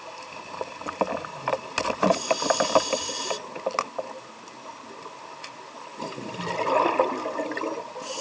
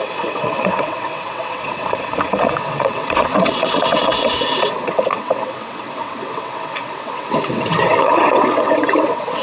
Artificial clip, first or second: second